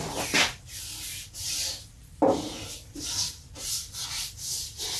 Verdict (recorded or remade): recorded